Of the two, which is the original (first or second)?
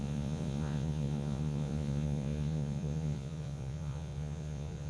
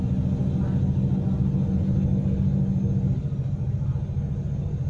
second